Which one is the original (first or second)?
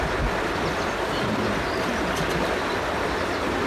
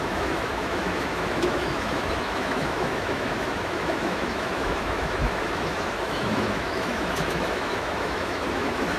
first